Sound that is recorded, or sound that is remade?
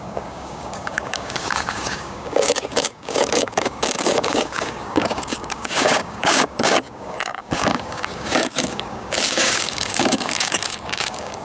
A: remade